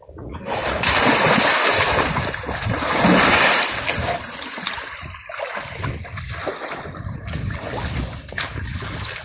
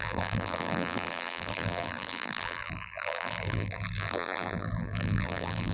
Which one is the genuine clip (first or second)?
first